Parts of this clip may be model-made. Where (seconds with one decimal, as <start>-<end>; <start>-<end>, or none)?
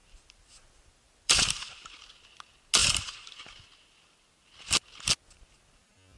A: 0.0-2.1